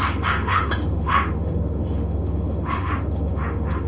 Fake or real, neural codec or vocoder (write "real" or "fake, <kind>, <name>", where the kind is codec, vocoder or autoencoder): fake, autoencoder, DAC-VAE